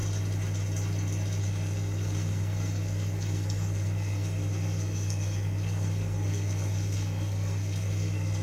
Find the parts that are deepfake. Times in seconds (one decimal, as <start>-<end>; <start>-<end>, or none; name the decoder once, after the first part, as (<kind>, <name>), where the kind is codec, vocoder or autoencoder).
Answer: 1.4-8.4 (codec, SNAC)